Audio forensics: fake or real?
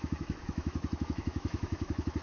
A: fake